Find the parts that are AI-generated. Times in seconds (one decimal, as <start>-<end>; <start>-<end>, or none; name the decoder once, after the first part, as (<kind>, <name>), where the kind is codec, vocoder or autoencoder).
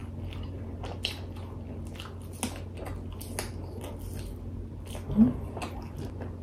none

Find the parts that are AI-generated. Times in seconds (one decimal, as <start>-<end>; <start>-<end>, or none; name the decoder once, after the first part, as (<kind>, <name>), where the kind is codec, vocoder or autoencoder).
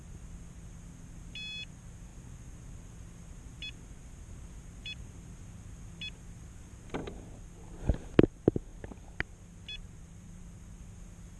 9.8-10.8 (vocoder, BigVGAN v2)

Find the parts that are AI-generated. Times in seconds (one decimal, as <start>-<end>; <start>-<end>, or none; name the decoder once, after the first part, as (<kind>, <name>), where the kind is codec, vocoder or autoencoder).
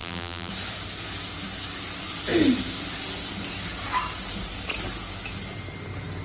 0.0-0.5 (vocoder, BigVGAN v2)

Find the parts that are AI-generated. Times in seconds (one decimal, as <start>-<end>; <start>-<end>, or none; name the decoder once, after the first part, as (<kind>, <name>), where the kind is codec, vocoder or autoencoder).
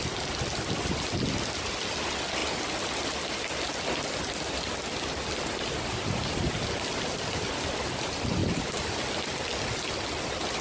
8.4-9.0 (vocoder, BigVGAN v2)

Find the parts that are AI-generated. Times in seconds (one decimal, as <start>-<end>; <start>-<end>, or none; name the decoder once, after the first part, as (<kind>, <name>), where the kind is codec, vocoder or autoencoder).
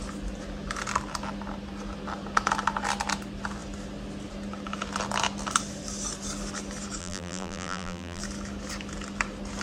7.0-8.2 (vocoder, BigVGAN v2)